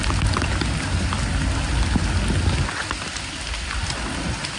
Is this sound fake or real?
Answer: real